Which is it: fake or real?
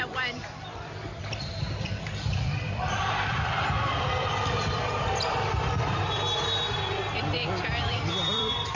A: fake